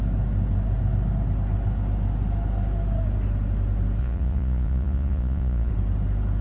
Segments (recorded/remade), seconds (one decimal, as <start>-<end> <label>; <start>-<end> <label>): 0.0-4.0 recorded; 4.0-5.7 remade; 5.7-6.4 recorded